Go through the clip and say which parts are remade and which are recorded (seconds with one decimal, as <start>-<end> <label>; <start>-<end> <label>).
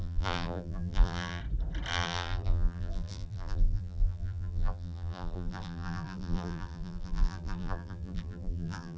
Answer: 0.0-1.4 remade; 1.4-1.9 recorded; 1.9-9.0 remade